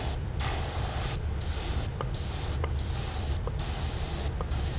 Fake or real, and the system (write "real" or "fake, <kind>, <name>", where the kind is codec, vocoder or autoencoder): real